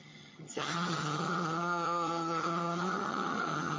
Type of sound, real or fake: fake